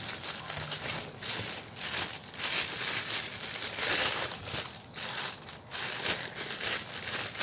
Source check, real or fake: real